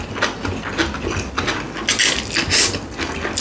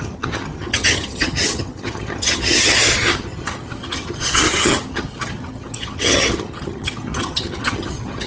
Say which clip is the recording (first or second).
first